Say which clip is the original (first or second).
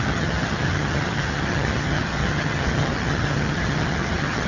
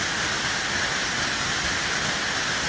second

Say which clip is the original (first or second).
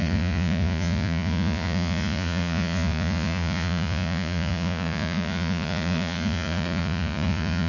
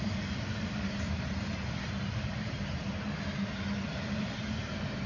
second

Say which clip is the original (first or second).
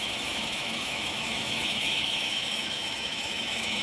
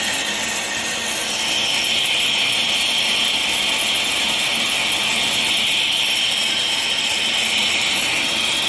second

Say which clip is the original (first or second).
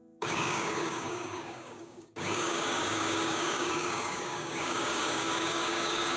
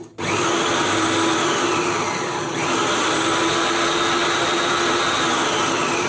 second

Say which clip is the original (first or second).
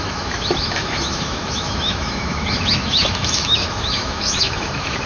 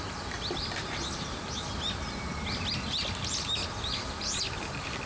second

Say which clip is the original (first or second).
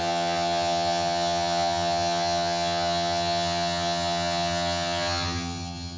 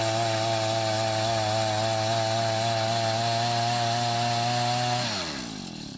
second